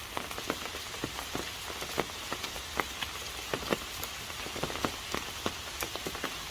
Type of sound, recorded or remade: recorded